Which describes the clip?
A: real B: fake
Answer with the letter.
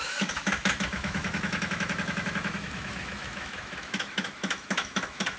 B